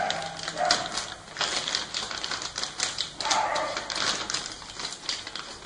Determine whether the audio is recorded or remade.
recorded